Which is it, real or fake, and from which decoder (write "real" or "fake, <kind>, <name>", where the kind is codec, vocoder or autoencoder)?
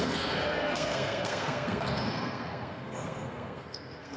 fake, codec, SNAC